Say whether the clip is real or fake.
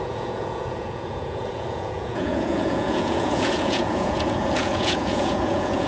fake